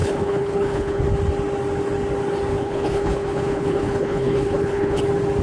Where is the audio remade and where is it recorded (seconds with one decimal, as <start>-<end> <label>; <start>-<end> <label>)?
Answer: 0.0-1.0 remade; 1.0-2.5 recorded; 2.5-5.0 remade; 5.0-5.4 recorded